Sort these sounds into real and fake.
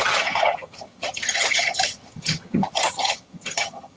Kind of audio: fake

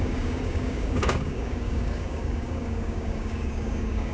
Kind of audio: fake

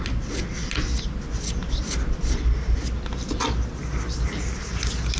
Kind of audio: real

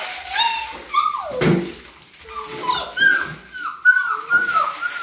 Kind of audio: real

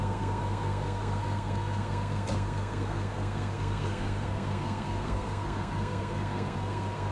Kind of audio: fake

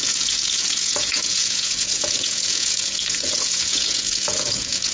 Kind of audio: fake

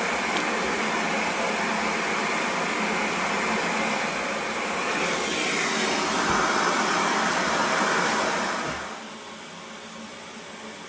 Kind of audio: real